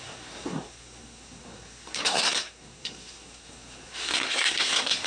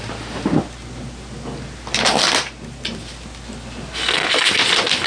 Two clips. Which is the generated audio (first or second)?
first